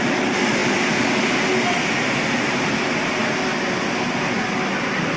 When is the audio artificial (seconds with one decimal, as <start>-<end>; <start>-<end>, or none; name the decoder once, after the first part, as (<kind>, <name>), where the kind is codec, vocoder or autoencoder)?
none